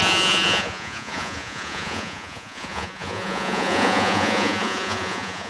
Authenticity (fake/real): fake